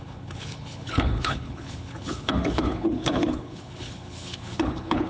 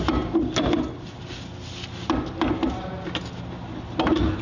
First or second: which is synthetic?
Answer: first